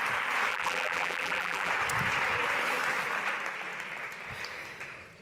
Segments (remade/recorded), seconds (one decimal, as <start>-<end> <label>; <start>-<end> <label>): 0.0-0.5 recorded; 0.5-1.7 remade; 1.7-5.2 recorded